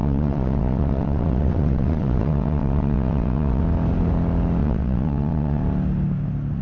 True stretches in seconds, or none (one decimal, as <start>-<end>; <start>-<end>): 3.6-4.6; 5.6-6.6